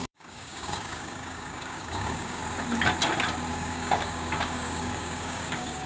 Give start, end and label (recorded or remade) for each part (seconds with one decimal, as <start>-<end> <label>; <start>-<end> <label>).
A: 0.0-2.4 remade; 2.4-3.5 recorded; 3.5-5.9 remade